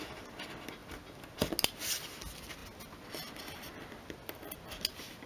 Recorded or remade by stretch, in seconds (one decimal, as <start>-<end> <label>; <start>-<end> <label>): 0.0-5.3 recorded